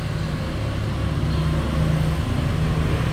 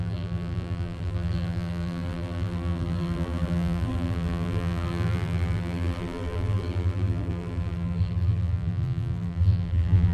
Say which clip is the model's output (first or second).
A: second